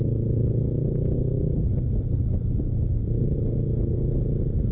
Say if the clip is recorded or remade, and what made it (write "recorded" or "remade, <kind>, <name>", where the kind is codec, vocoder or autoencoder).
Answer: recorded